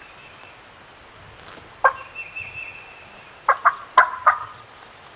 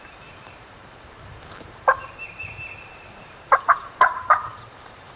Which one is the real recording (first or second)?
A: first